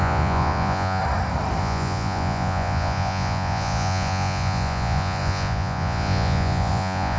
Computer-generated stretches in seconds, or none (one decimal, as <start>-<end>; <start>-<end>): 0.0-1.0; 1.6-7.2